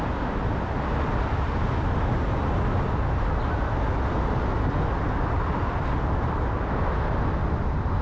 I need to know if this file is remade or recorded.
recorded